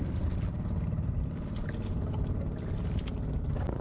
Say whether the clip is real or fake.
real